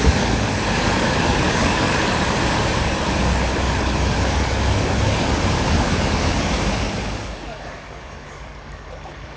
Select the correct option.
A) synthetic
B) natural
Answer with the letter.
A